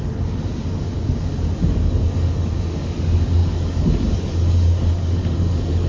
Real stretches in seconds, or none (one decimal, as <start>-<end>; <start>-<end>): none